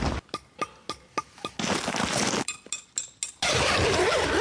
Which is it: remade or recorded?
recorded